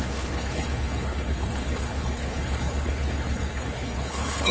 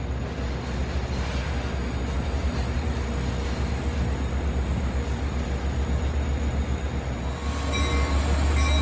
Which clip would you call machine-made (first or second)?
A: first